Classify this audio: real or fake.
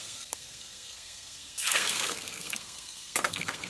fake